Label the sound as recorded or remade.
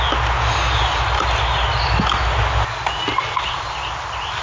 recorded